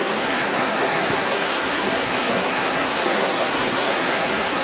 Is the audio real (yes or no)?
no